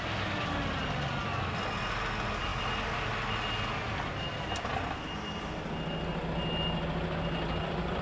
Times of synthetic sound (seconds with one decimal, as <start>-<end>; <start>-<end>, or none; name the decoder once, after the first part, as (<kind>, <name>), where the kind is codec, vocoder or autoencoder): none